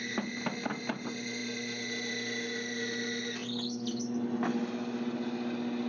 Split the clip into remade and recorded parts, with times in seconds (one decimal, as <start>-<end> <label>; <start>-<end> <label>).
0.0-5.9 recorded